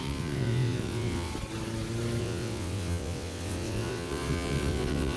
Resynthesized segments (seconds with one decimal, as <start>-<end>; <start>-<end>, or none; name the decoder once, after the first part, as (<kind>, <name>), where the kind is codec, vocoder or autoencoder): 0.0-1.3 (vocoder, WaveNeXt); 2.2-5.2